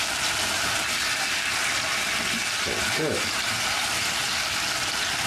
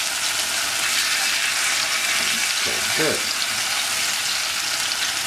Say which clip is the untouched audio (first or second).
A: second